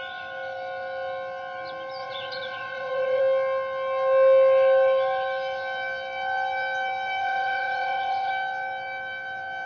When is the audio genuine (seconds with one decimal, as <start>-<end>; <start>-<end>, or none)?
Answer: 0.0-2.0; 3.2-7.2; 8.3-9.7